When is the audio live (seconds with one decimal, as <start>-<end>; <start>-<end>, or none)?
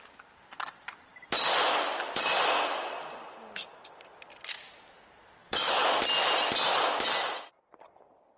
0.0-5.4; 6.0-8.4